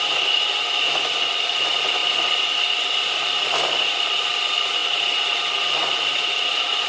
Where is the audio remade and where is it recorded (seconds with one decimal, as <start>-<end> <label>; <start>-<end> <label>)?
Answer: 0.0-6.9 recorded